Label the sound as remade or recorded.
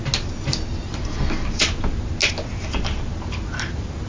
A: recorded